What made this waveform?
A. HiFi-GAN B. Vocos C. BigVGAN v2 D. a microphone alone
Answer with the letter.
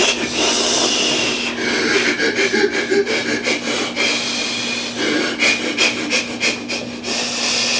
D